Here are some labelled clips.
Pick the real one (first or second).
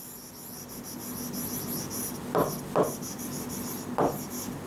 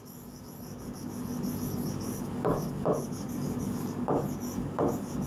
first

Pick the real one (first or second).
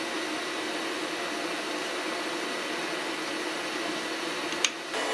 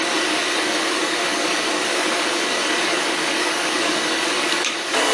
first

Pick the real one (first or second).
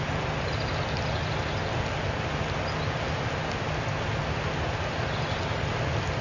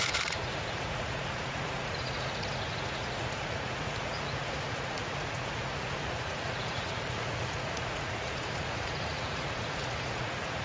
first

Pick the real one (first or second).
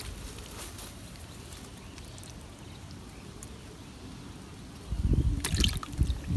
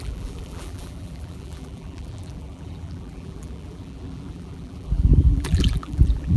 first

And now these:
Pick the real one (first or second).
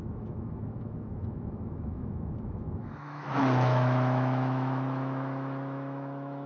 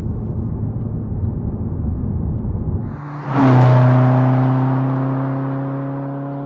second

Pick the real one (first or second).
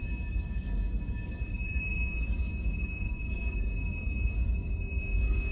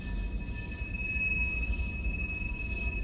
second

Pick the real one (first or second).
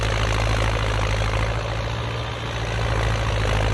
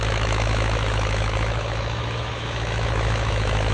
first